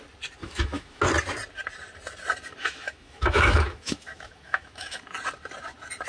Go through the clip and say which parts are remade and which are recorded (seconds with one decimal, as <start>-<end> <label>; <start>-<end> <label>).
0.0-0.4 recorded; 0.4-1.0 remade; 1.0-2.6 recorded; 2.6-5.0 remade; 5.0-6.1 recorded